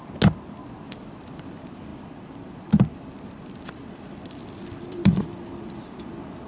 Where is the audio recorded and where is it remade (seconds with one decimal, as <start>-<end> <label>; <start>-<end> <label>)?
0.0-0.6 recorded; 0.6-1.3 remade; 1.3-1.9 recorded; 1.9-5.8 remade; 5.8-6.5 recorded